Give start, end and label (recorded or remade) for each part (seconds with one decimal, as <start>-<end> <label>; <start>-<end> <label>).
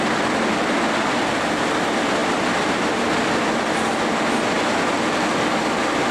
0.0-6.1 recorded